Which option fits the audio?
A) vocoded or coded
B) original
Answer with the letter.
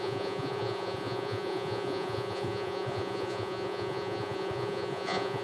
A